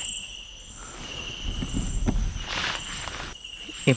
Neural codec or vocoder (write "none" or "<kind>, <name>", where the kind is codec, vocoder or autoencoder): none